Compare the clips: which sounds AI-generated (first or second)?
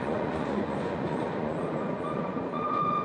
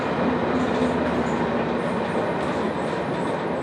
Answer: first